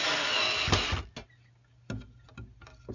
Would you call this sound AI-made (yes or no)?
no